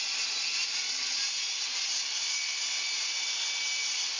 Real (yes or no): yes